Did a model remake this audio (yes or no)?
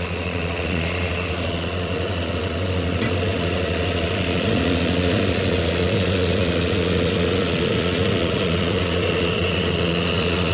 yes